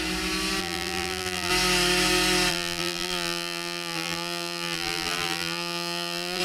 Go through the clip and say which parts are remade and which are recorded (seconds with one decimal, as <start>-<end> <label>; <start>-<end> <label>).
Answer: 0.0-0.6 recorded; 0.6-1.5 remade; 1.5-2.5 recorded; 2.5-6.4 remade